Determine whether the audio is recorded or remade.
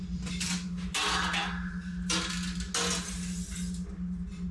recorded